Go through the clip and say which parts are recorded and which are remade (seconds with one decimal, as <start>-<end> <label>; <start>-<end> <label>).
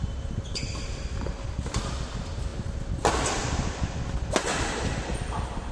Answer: 0.0-5.7 recorded